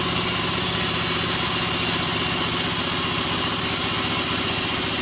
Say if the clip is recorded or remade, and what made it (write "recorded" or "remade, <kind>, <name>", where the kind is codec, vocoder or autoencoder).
recorded